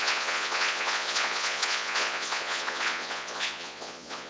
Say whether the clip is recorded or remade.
remade